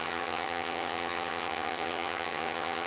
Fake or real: fake